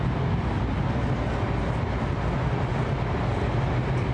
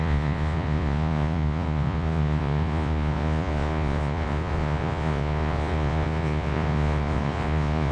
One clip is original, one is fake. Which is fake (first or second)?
second